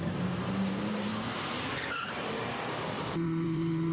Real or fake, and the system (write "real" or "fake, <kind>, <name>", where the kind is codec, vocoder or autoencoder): fake, vocoder, BigVGAN v2